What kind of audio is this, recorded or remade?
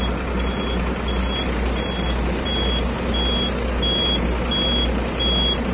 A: recorded